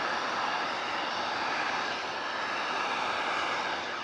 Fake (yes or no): no